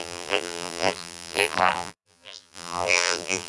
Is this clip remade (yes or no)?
yes